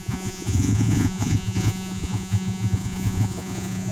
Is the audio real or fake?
fake